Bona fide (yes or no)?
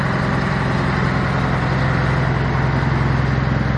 yes